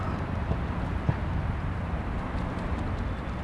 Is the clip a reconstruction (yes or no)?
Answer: no